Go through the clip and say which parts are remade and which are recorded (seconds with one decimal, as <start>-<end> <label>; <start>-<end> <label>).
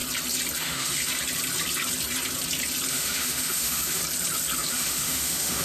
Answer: 0.0-0.6 recorded; 0.6-1.0 remade; 1.0-2.9 recorded; 2.9-4.0 remade; 4.0-4.7 recorded; 4.7-5.6 remade